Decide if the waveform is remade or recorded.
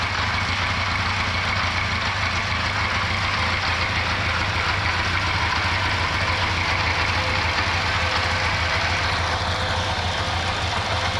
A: recorded